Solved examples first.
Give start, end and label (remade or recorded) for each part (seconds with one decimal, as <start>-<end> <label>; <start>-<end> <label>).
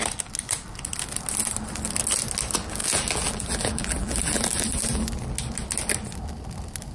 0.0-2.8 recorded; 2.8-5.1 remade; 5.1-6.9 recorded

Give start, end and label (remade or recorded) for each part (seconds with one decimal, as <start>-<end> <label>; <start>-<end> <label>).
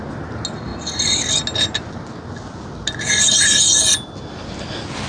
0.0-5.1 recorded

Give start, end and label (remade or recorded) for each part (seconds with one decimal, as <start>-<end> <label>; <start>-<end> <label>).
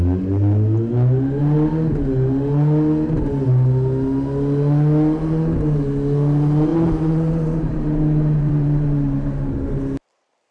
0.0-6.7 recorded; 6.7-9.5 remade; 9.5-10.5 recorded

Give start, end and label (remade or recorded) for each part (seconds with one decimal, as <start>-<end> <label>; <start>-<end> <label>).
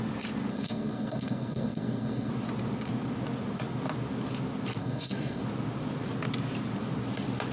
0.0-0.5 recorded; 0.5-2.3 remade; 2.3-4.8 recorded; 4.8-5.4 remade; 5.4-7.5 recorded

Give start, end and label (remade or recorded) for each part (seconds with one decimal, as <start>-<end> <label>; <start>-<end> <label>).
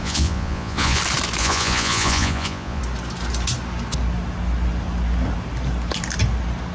0.0-1.0 remade; 1.0-1.4 recorded; 1.4-2.8 remade; 2.8-6.7 recorded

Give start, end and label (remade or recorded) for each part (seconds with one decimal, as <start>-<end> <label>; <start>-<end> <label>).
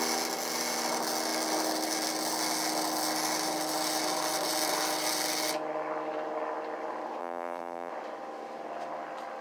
0.0-7.2 recorded; 7.2-7.9 remade; 7.9-9.4 recorded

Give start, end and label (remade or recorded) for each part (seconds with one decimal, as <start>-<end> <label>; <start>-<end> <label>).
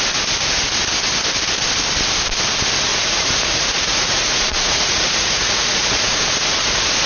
0.0-2.9 recorded; 2.9-7.1 remade